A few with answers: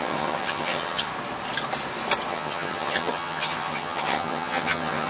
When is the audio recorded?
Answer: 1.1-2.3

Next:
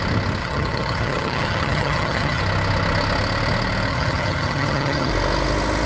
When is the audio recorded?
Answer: 0.0-0.4; 2.4-3.9; 5.1-5.9

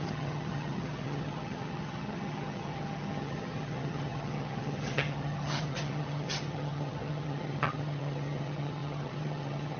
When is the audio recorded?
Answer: none

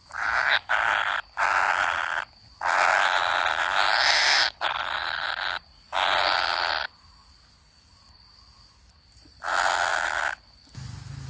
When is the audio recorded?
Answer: 0.0-11.3

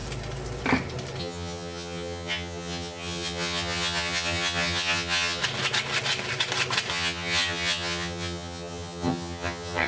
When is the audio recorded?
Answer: 0.0-1.2; 5.4-6.9

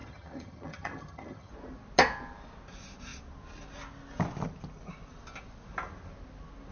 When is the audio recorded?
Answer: 1.5-6.7

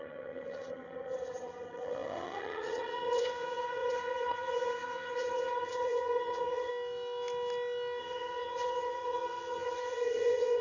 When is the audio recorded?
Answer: 6.7-8.0

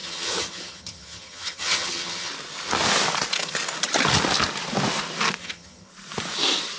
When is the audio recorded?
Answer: 2.3-5.4; 5.9-6.8